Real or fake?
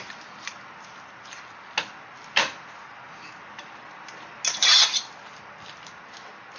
real